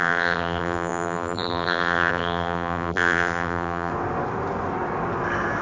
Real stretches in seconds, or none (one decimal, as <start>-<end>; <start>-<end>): 3.9-5.6